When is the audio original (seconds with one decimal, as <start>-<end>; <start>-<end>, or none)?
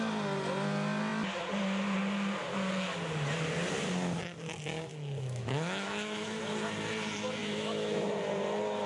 0.0-4.9; 6.4-7.4; 8.1-8.9